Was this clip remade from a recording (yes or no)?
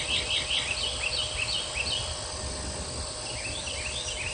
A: no